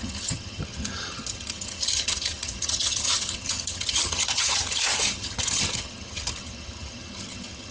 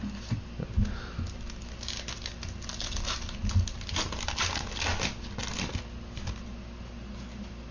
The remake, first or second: first